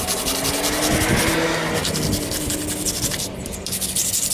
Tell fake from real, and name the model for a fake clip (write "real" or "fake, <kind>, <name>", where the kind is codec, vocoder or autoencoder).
real